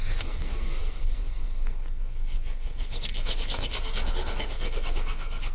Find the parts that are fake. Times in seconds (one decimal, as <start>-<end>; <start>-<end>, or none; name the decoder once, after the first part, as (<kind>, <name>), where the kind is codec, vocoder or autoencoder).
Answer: 0.0-5.5 (codec, SNAC)